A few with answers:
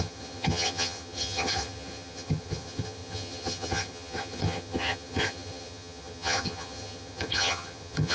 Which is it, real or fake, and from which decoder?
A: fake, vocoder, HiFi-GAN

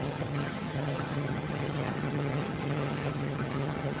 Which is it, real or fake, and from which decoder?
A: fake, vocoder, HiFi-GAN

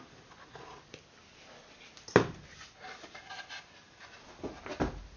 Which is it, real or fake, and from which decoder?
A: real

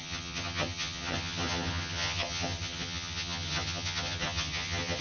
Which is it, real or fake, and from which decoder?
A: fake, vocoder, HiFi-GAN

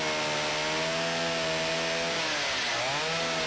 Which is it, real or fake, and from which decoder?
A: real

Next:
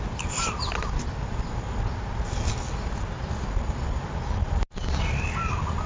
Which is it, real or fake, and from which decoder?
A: real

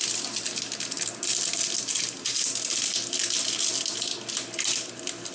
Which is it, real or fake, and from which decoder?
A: real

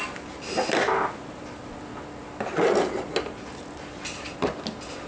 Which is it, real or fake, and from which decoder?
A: real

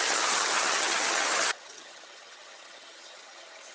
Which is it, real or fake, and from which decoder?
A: fake, vocoder, HiFi-GAN